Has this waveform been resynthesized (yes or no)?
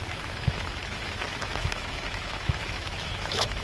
yes